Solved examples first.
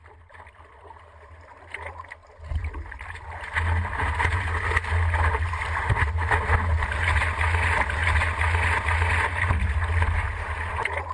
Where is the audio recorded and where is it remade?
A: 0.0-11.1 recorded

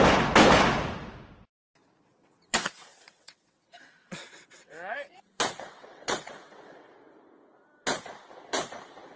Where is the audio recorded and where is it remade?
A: 0.0-2.1 recorded; 2.1-6.9 remade; 6.9-9.2 recorded